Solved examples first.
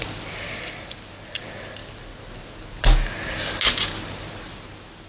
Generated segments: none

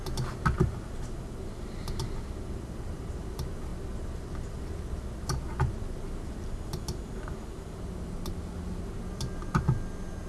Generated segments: none

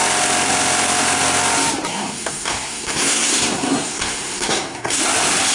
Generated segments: 1.9-5.0 (codec, SNAC)

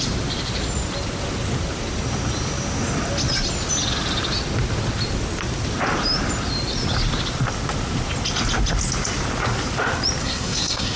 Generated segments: 10.2-11.0 (codec, SNAC)

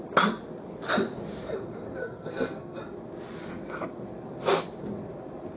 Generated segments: 2.0-2.8 (codec, SNAC)

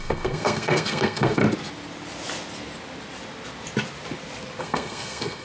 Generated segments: 0.0-1.4 (codec, SNAC); 4.6-5.4

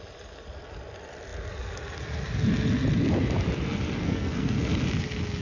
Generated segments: 4.0-4.7 (codec, SNAC)